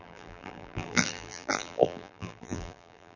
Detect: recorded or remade remade